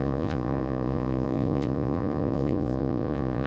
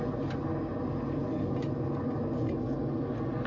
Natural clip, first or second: second